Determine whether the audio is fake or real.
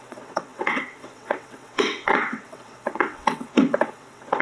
fake